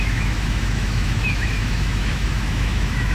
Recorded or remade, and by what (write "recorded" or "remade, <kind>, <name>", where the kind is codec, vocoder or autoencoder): remade, autoencoder, DAC-VAE